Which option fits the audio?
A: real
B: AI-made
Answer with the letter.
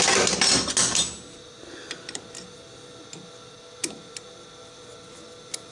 A